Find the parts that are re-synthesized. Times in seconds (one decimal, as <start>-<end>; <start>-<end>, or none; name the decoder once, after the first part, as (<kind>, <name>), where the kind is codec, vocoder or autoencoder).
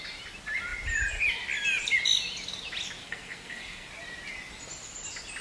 3.0-3.9 (codec, SNAC)